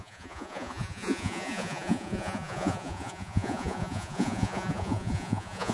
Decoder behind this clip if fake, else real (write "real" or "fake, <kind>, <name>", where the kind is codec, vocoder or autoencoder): fake, vocoder, Vocos